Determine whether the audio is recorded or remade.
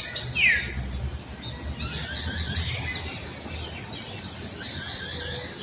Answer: recorded